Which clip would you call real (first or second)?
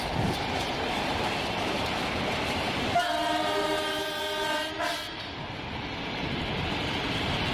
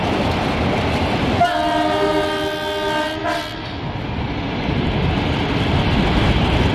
second